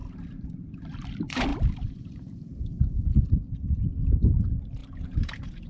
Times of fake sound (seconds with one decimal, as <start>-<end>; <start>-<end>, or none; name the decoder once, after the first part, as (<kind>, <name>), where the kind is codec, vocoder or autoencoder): 0.0-0.9 (vocoder, BigVGAN v2); 1.5-2.1; 4.8-5.7